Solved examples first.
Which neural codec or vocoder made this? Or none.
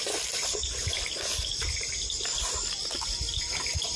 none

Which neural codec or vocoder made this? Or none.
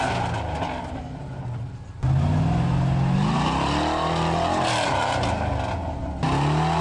none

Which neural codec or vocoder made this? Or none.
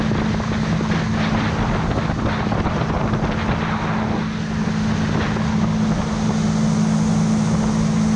none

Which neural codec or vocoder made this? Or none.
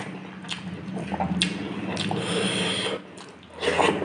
none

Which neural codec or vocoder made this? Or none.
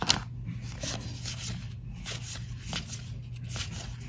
none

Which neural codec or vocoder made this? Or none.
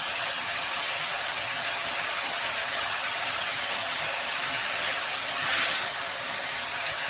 vocoder, HiFi-GAN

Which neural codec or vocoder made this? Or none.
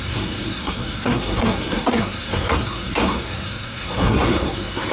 codec, SNAC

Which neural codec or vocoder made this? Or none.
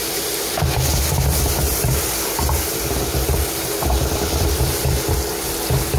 vocoder, BigVGAN v2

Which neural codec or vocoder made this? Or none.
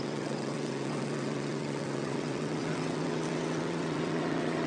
vocoder, WaveNeXt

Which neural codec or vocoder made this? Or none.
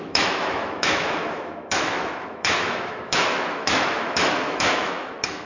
autoencoder, DAC-VAE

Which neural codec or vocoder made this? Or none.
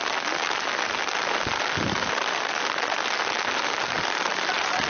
none